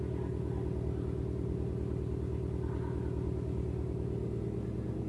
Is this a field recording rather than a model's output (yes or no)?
yes